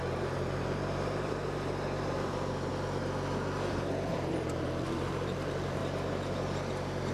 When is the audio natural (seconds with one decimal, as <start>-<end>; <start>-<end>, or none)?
2.7-4.1; 5.8-7.1